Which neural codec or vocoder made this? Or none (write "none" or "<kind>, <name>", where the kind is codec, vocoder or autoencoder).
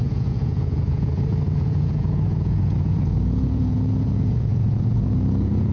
vocoder, Vocos